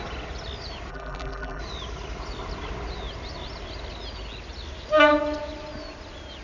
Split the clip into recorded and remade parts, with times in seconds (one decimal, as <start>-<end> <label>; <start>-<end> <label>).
0.0-0.9 recorded; 0.9-1.6 remade; 1.6-6.4 recorded